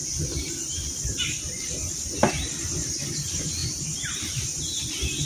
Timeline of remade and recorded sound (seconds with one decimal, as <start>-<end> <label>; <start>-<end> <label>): 0.0-3.6 recorded; 3.6-4.6 remade; 4.6-5.3 recorded